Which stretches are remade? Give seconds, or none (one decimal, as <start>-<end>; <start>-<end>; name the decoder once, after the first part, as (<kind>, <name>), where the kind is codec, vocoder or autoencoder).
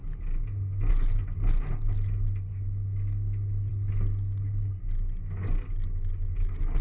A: none